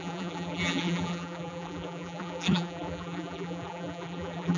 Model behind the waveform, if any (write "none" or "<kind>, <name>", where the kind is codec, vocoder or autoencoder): vocoder, BigVGAN v2